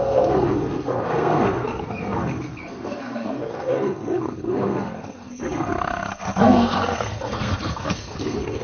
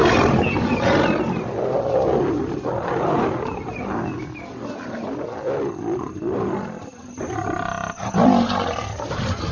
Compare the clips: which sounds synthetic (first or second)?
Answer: first